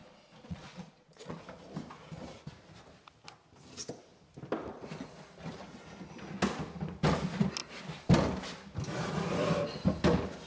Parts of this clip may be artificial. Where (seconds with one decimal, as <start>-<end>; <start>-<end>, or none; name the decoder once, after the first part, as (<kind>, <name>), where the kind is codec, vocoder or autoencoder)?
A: 0.0-1.4 (vocoder, Vocos)